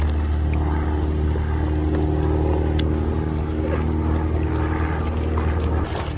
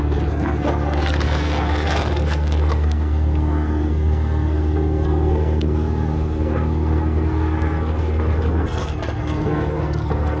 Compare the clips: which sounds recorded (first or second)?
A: first